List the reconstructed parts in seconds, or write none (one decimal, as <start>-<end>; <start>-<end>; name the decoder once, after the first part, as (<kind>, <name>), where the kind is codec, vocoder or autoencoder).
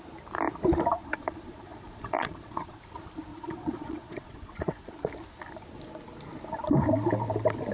1.0-2.8 (vocoder, Vocos); 3.3-4.9